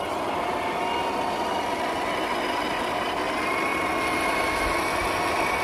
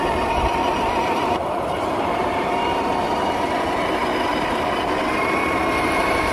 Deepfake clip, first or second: second